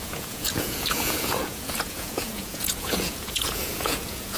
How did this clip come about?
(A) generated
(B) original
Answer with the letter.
A